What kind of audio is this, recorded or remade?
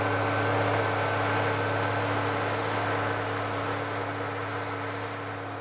recorded